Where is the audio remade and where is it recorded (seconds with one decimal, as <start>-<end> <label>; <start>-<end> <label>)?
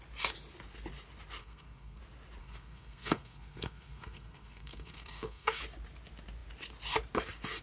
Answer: 0.0-1.4 recorded; 1.4-2.0 remade; 2.0-2.4 recorded; 2.4-5.6 remade; 5.6-7.6 recorded